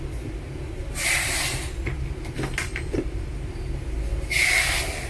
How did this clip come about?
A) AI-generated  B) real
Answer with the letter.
B